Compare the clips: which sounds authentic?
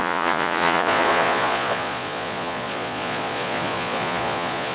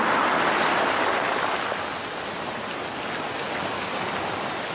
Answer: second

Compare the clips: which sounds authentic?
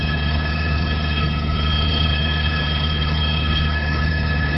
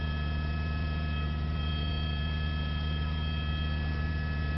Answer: second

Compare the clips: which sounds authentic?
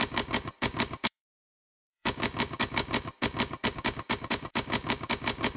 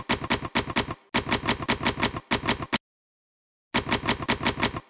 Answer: second